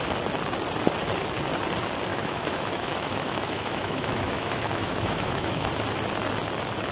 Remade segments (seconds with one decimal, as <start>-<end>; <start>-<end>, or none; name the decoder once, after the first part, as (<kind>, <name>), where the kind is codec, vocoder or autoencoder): 2.1-5.7 (autoencoder, DAC-VAE)